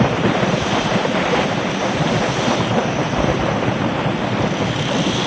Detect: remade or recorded remade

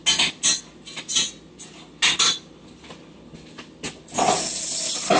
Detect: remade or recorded recorded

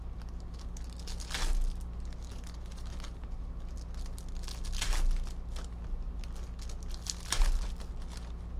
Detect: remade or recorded recorded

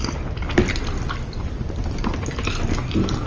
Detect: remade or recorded recorded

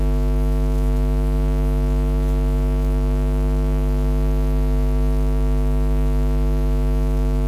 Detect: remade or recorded remade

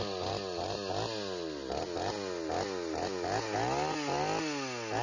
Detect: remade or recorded recorded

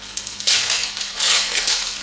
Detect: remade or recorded remade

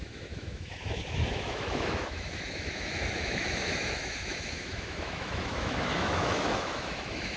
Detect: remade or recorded remade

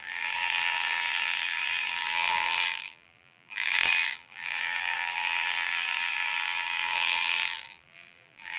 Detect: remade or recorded remade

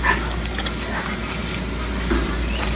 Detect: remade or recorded recorded